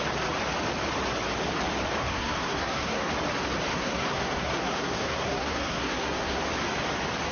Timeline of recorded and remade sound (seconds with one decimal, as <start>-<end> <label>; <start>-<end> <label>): 0.0-2.0 recorded; 2.0-3.1 remade; 3.1-3.7 recorded; 3.7-6.4 remade; 6.4-7.3 recorded